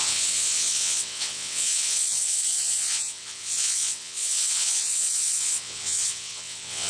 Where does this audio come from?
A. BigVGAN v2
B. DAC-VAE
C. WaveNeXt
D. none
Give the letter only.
C